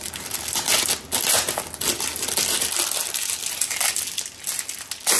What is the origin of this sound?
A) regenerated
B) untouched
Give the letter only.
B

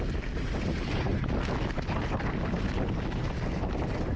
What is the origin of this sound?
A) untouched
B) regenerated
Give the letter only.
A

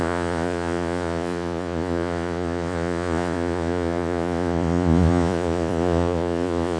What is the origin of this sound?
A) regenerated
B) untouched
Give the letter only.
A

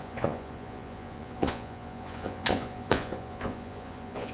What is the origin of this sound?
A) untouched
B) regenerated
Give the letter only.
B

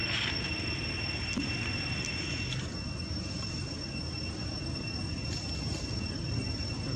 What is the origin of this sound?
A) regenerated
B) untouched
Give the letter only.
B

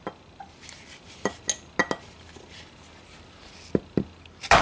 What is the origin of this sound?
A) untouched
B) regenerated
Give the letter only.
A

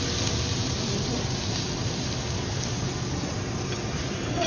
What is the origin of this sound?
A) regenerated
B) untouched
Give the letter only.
B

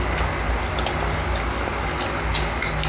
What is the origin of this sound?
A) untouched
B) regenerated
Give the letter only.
A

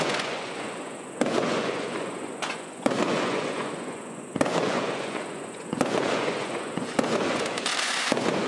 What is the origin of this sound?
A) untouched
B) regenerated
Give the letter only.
B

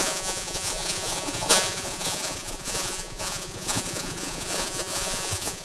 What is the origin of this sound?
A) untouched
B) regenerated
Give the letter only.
B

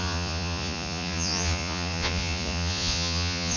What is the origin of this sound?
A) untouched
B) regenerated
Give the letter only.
B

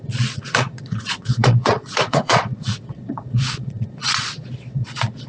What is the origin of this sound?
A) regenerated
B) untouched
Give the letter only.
A